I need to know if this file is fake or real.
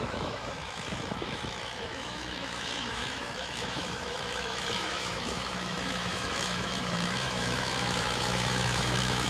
fake